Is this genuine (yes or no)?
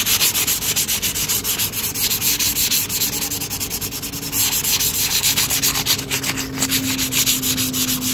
yes